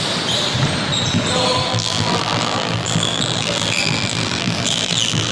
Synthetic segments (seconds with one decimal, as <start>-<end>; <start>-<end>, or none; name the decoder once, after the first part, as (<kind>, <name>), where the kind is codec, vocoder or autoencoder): 1.7-5.3 (vocoder, BigVGAN v2)